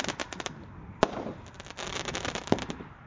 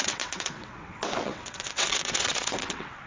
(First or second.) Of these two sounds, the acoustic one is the first